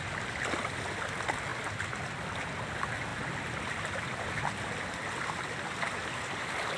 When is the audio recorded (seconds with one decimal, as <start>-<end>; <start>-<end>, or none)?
0.0-1.5; 2.4-3.1; 4.3-6.8